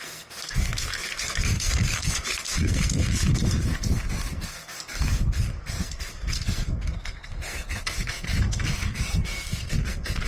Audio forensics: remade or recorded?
remade